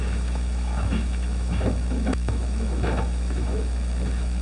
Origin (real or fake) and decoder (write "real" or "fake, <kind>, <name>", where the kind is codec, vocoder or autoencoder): fake, autoencoder, DAC-VAE